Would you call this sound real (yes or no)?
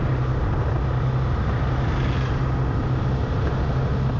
yes